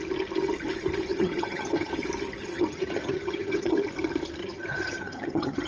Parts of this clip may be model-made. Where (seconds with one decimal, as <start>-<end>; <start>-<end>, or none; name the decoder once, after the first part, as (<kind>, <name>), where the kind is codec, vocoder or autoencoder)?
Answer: 1.1-1.9 (vocoder, HiFi-GAN); 2.4-3.9; 4.4-5.7